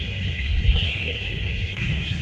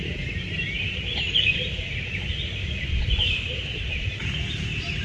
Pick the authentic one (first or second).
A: second